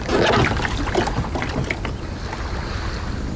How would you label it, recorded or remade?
recorded